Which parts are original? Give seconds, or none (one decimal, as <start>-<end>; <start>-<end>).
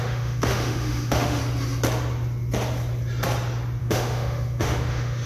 1.4-3.8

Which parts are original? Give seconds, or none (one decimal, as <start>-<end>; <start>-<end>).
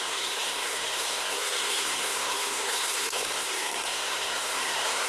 none